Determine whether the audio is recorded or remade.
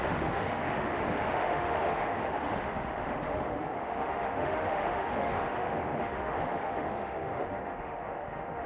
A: remade